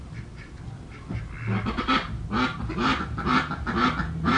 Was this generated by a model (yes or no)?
no